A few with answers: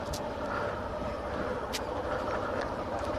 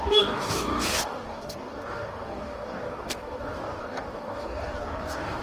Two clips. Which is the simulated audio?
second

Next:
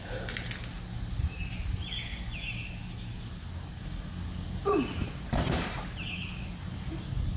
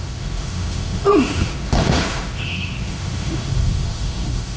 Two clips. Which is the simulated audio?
second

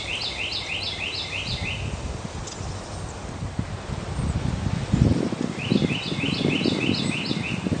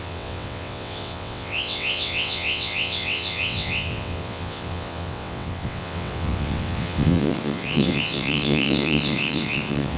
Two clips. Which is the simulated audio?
second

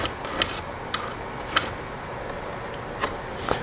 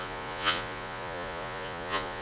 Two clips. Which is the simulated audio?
second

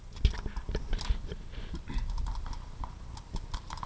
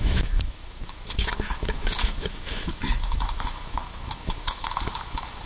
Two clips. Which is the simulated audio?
second